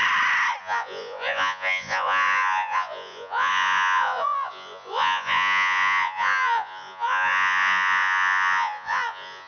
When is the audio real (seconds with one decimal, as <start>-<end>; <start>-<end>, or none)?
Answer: 0.0-0.6